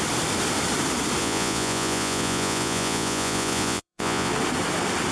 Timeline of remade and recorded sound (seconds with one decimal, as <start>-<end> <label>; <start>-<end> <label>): 0.0-1.2 recorded; 1.2-4.3 remade; 4.3-5.1 recorded